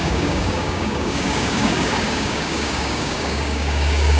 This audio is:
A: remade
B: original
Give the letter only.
A